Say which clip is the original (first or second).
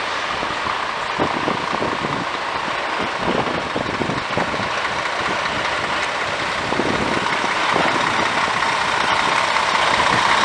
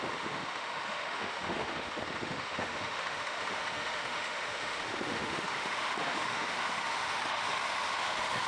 first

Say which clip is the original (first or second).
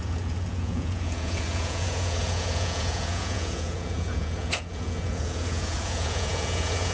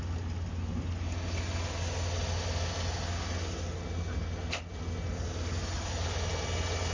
second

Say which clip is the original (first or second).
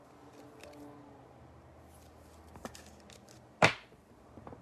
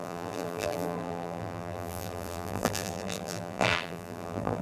first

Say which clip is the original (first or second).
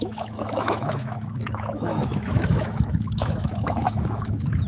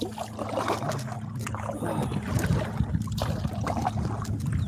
second